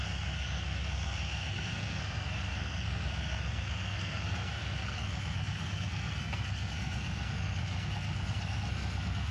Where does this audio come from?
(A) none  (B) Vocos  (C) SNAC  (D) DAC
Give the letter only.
C